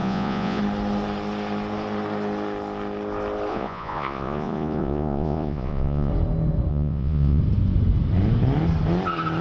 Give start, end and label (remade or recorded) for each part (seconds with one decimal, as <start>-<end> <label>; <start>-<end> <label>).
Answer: 0.0-0.6 remade; 0.6-3.5 recorded; 3.5-6.1 remade; 6.1-6.7 recorded; 6.7-7.4 remade; 7.4-9.4 recorded